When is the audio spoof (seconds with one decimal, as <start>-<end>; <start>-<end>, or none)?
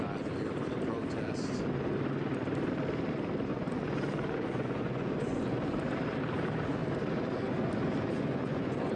3.5-5.8; 8.1-9.0